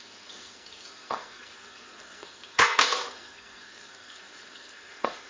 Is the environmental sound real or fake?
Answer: fake